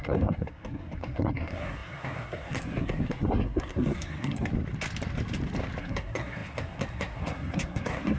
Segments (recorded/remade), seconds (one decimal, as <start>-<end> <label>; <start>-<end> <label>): 0.0-4.5 remade; 4.5-5.8 recorded; 5.8-8.2 remade